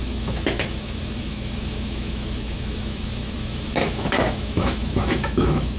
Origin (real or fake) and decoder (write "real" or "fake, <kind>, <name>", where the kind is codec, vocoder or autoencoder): fake, autoencoder, DAC-VAE